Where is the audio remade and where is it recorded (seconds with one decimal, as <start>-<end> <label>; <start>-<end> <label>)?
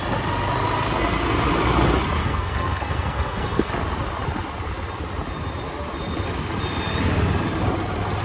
0.0-2.2 recorded; 2.2-3.7 remade; 3.7-8.2 recorded